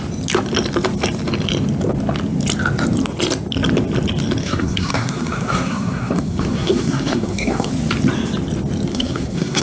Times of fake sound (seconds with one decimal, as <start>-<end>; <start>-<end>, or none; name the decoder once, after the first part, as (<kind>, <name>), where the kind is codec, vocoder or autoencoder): 4.4-7.7 (codec, SNAC); 8.9-9.6